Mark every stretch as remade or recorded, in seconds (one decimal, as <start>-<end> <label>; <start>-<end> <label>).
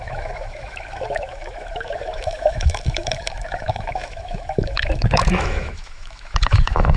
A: 0.0-7.0 remade